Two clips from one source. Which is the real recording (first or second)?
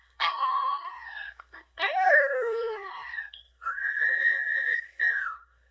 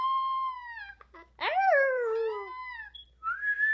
second